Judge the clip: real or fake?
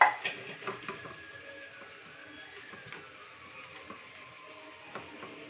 real